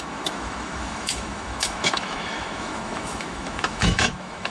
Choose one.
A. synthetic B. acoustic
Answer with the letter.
A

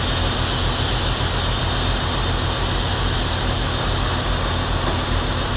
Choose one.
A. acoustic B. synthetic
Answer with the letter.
A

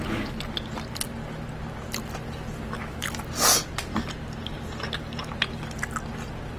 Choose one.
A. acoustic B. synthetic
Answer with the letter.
A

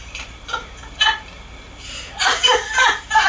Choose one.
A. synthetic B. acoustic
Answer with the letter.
A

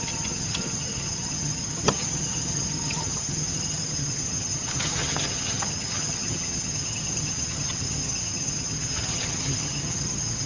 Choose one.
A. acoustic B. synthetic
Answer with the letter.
B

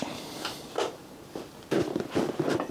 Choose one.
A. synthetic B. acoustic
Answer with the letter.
B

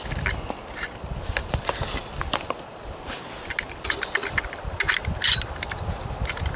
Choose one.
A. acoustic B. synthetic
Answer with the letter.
A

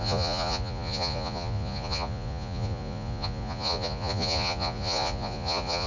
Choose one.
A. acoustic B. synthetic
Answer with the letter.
B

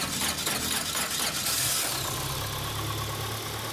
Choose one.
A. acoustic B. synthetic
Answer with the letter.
A